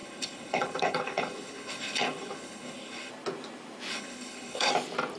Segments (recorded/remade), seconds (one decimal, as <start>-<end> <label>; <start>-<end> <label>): 0.0-3.1 remade; 3.1-3.9 recorded; 3.9-4.7 remade; 4.7-5.2 recorded